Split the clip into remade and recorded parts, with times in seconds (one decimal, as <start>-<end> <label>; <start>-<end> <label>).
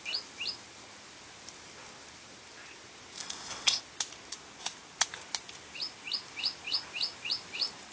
0.0-3.2 recorded; 3.2-3.8 remade; 3.8-7.9 recorded